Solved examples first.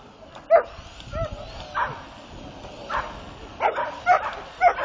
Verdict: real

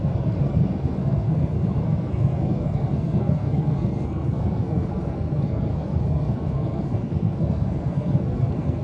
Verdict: fake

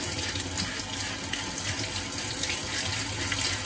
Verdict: real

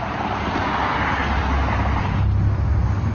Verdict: real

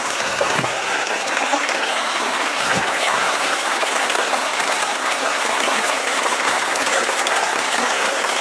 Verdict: fake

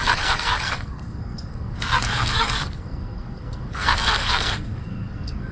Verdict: fake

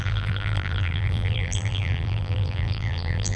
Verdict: fake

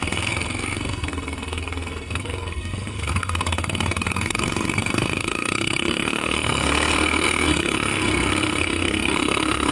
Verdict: fake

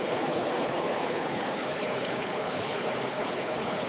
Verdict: fake